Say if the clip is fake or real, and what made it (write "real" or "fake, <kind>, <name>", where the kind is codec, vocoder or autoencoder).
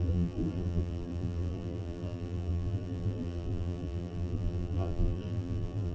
fake, vocoder, BigVGAN v2